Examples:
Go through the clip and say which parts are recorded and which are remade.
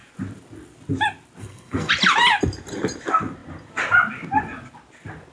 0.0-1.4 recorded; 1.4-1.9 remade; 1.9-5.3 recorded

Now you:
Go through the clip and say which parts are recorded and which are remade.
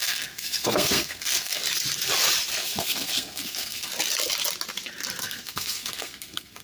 0.0-1.6 remade; 1.6-2.5 recorded; 2.5-3.9 remade; 3.9-5.2 recorded; 5.2-6.6 remade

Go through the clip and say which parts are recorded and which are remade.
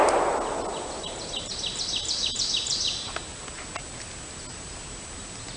0.0-5.6 recorded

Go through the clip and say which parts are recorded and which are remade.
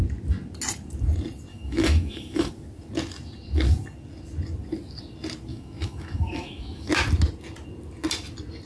0.0-1.5 recorded; 1.5-2.5 remade; 2.5-5.5 recorded; 5.5-6.9 remade; 6.9-8.7 recorded